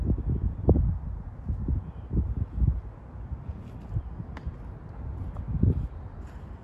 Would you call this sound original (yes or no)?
yes